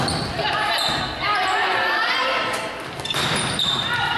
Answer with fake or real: fake